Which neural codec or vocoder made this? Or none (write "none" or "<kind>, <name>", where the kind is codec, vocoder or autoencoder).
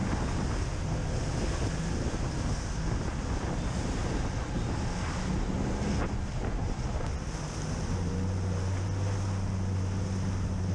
none